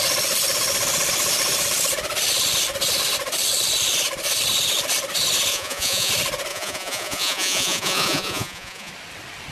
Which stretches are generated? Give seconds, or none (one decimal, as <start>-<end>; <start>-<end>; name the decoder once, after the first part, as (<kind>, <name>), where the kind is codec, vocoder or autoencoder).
5.5-6.1 (vocoder, Vocos); 6.5-8.9